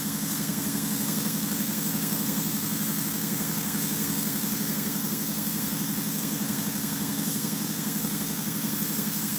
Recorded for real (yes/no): no